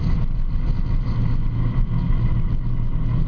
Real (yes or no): yes